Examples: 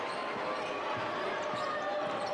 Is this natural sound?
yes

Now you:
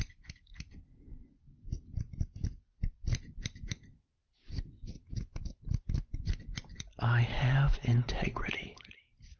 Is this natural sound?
yes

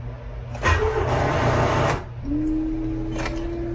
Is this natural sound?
yes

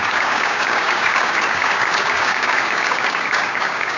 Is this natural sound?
no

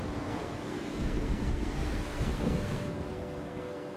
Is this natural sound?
no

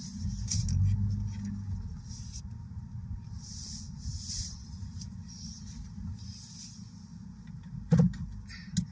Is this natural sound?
yes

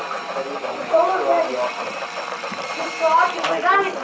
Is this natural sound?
no